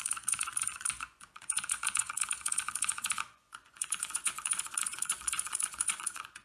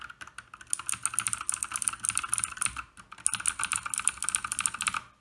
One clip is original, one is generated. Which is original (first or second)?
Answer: second